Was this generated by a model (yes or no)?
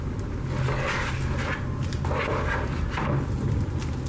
no